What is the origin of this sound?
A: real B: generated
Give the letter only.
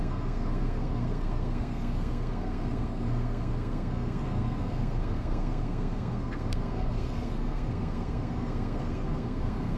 B